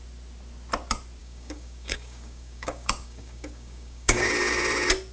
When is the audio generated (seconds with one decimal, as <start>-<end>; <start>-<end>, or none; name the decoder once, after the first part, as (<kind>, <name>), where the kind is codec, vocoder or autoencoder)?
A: 1.2-4.3 (codec, DAC)